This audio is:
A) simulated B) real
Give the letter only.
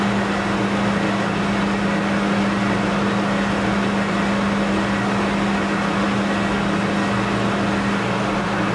B